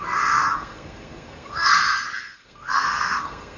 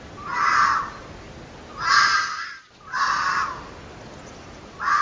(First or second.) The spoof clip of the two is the first